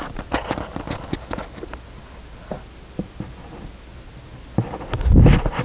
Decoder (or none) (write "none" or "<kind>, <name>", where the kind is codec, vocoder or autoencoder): none